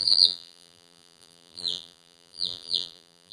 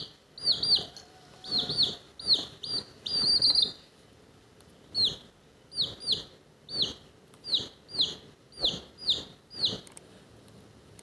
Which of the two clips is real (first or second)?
second